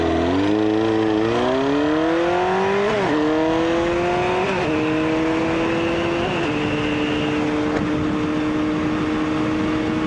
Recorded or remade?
recorded